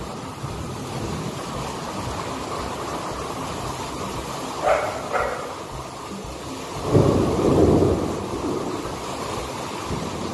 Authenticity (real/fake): real